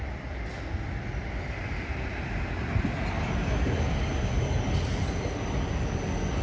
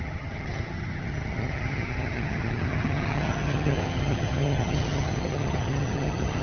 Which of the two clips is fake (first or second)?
second